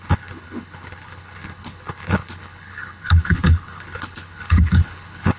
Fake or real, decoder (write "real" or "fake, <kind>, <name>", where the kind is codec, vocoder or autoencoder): fake, codec, HILCodec